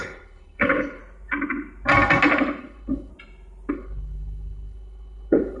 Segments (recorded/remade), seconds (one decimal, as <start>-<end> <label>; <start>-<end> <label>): 0.0-1.0 remade; 1.0-2.6 recorded; 2.6-3.1 remade; 3.1-3.7 recorded; 3.7-5.6 remade